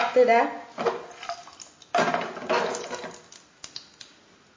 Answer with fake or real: real